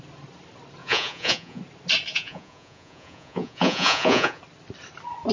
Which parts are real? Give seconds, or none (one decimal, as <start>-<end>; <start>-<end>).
0.0-0.8; 1.6-2.1; 4.4-5.3